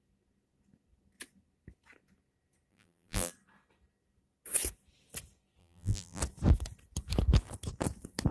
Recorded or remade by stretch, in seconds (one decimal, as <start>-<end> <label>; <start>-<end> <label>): 0.0-2.7 recorded; 2.7-3.3 remade; 3.3-5.6 recorded; 5.6-6.2 remade; 6.2-8.3 recorded